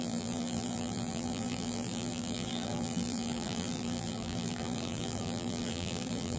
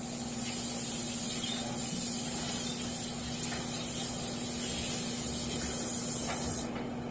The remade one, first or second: first